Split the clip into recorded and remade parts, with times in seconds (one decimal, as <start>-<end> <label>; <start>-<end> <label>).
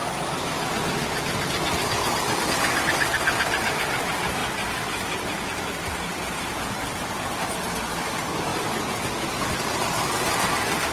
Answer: 0.0-10.9 recorded